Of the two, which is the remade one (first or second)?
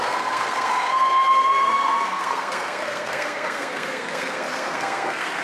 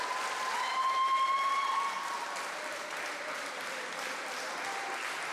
first